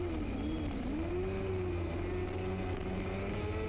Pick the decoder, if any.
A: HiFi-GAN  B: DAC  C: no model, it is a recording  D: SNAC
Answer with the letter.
C